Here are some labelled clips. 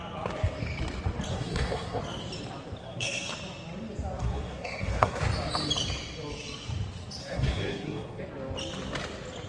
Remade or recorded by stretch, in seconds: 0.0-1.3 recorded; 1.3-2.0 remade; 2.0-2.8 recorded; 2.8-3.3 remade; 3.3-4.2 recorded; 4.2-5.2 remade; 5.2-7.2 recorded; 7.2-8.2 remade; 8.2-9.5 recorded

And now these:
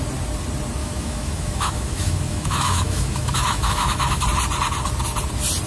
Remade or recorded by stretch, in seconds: 0.0-0.8 recorded; 0.8-4.2 remade; 4.2-5.7 recorded

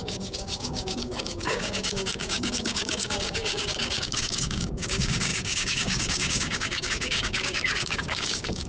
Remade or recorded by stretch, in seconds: 0.0-8.7 remade

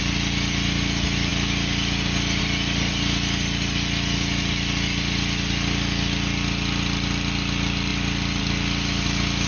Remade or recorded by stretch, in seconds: 0.0-9.5 recorded

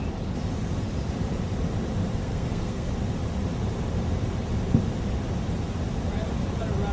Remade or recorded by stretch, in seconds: 0.0-2.2 recorded; 2.2-2.9 remade; 2.9-6.9 recorded

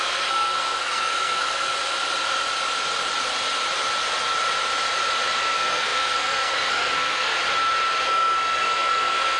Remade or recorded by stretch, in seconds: 0.0-1.7 remade; 1.7-5.4 recorded; 5.4-7.3 remade; 7.3-8.0 recorded; 8.0-9.4 remade

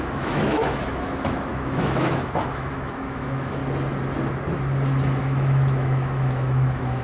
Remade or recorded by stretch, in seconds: 0.0-3.6 remade; 3.6-5.2 recorded; 5.2-7.0 remade

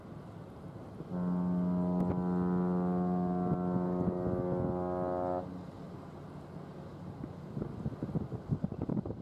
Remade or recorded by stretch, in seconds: 0.0-9.2 recorded